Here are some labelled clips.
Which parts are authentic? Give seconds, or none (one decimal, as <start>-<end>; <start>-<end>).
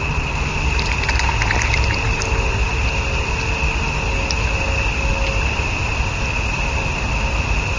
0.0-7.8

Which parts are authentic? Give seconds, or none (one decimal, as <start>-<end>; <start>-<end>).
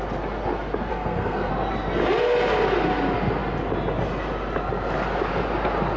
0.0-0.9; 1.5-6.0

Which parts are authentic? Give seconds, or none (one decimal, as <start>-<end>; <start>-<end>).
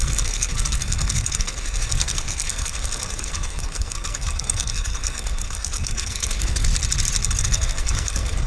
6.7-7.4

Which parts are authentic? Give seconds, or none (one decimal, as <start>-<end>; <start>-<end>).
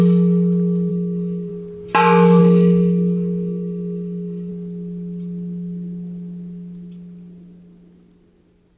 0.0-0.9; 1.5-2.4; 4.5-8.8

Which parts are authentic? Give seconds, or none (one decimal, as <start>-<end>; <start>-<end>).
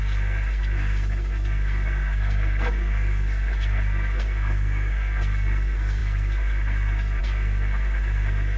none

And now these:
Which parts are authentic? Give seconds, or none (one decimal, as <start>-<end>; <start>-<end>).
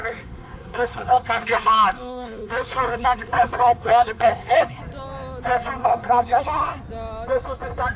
4.8-5.8; 6.8-8.0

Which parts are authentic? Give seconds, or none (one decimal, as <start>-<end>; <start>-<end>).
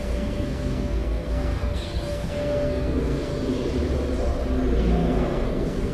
3.3-4.8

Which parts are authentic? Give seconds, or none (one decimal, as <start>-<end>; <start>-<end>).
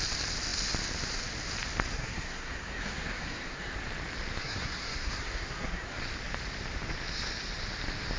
0.0-1.9; 3.8-4.4; 6.0-8.2